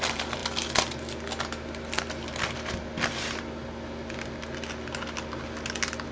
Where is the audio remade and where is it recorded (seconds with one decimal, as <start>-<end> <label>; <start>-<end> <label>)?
0.0-6.1 recorded